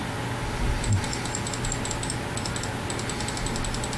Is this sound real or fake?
real